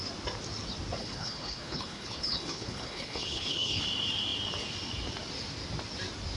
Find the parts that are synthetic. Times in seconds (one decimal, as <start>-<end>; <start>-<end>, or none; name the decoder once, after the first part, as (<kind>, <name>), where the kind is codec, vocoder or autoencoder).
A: 1.0-3.8 (codec, HILCodec)